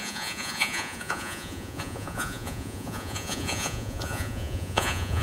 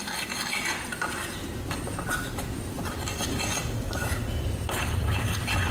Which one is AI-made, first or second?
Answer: first